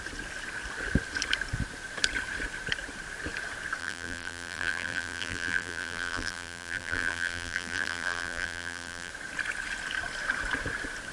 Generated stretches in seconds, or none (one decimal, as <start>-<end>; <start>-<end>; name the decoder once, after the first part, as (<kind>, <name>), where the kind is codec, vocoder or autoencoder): 3.8-9.1 (vocoder, BigVGAN v2)